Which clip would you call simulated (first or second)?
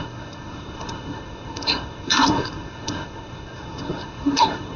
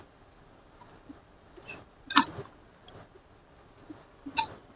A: first